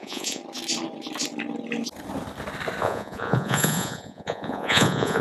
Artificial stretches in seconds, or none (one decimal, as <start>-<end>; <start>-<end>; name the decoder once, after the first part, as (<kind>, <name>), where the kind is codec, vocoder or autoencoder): 0.0-0.4 (vocoder, Vocos); 2.8-5.2